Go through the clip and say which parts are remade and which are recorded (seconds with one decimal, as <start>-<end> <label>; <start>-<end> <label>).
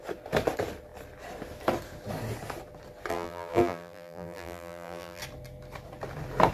0.0-3.1 recorded; 3.1-5.2 remade; 5.2-6.5 recorded